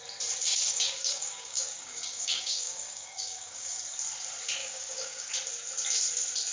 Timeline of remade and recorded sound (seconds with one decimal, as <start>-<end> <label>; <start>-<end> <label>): 0.0-0.5 recorded; 0.5-3.8 remade; 3.8-4.6 recorded; 4.6-5.3 remade; 5.3-6.5 recorded